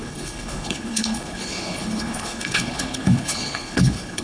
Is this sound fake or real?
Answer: fake